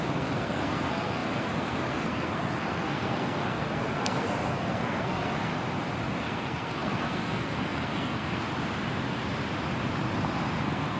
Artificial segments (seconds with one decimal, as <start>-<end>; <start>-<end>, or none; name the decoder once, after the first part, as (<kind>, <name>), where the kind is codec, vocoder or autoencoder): 0.0-5.5 (codec, SNAC); 6.2-8.4; 10.6-11.0